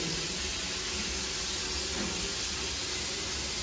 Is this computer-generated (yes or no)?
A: no